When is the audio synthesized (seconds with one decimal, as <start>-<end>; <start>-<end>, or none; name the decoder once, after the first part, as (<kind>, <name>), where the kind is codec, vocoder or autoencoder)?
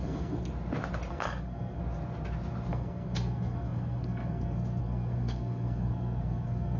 0.0-0.5 (codec, SNAC); 1.1-1.8; 2.7-6.8